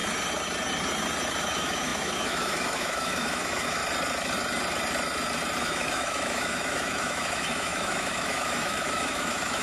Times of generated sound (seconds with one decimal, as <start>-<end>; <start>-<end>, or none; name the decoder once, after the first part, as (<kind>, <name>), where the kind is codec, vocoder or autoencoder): 1.4-3.8 (autoencoder, DAC-VAE); 5.6-9.6